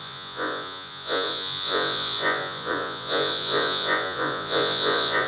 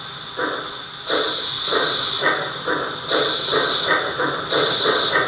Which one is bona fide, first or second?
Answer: second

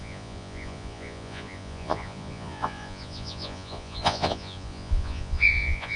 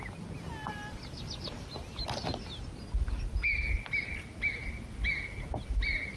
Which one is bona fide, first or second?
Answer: second